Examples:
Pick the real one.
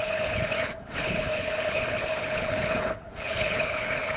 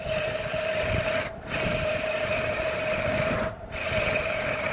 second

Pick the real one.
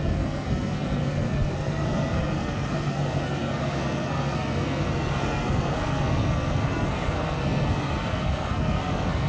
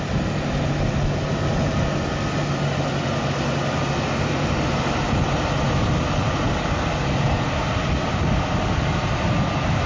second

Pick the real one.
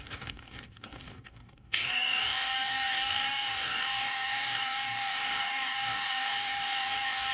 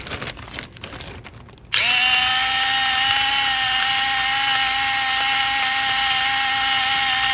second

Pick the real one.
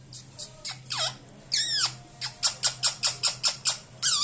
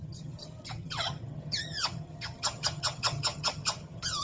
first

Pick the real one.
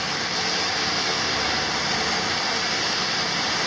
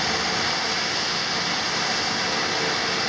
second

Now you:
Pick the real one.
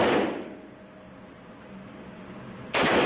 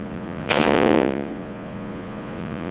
first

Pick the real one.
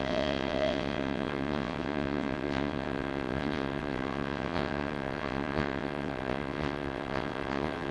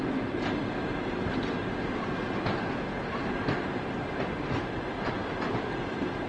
second